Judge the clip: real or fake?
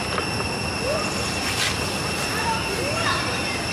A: real